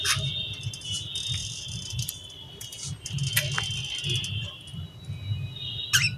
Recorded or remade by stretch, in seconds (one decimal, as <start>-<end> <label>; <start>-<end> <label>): 0.0-1.4 recorded; 1.4-2.5 remade; 2.5-6.2 recorded